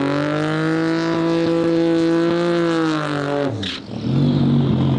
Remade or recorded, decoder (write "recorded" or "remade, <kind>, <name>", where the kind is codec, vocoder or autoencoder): recorded